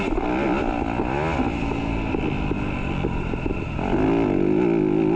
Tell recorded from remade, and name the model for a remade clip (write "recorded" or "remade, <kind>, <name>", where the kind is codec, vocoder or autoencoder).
recorded